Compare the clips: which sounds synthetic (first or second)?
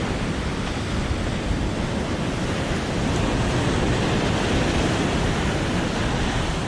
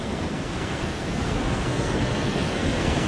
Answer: second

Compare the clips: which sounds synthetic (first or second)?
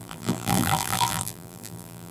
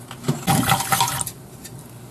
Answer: first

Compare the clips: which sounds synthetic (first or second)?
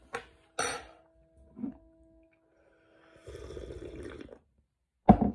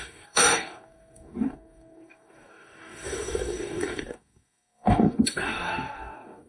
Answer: second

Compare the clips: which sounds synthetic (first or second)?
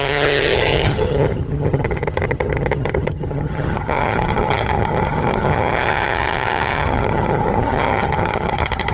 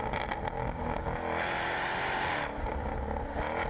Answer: first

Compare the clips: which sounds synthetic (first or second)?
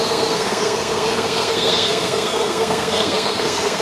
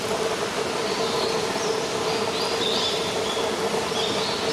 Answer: first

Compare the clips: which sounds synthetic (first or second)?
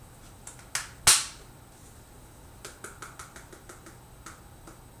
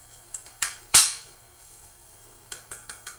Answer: second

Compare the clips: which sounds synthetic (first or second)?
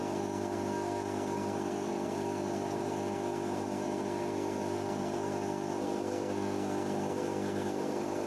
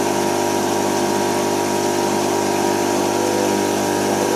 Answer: first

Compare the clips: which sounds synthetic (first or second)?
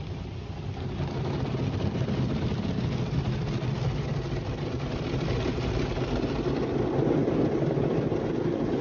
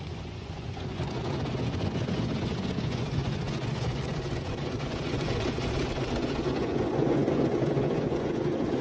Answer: second